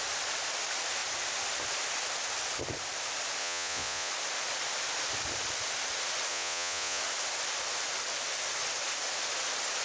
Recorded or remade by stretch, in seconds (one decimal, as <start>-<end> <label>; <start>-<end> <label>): 0.0-3.4 recorded; 3.4-4.1 remade; 4.1-6.3 recorded; 6.3-7.0 remade; 7.0-9.8 recorded